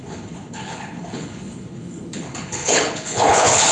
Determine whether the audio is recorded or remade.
remade